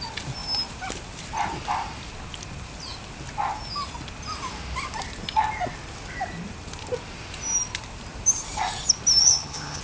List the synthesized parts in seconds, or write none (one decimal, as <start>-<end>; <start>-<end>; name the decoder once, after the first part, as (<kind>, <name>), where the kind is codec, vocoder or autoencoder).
9.2-9.8 (vocoder, HiFi-GAN)

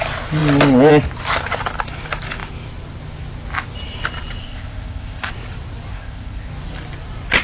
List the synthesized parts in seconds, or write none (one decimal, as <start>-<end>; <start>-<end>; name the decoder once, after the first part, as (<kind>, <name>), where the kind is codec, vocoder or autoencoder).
4.4-5.3 (codec, ZipCodec); 5.9-6.5

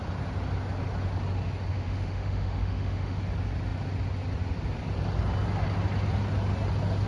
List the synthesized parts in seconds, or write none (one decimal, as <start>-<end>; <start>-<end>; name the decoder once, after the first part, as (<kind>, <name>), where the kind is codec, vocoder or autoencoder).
1.7-3.2 (autoencoder, DAC-VAE)

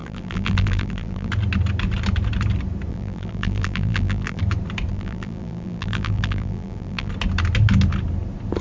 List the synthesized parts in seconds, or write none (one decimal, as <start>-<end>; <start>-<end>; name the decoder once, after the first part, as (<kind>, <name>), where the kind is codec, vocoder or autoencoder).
0.0-1.3 (vocoder, BigVGAN v2); 2.9-4.4; 4.9-7.1